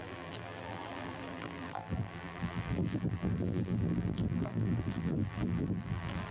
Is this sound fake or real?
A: fake